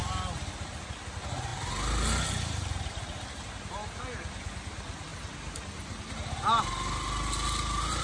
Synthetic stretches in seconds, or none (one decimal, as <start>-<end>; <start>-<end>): none